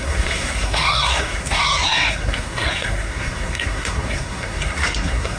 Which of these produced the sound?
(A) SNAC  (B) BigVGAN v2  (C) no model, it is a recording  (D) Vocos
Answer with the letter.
A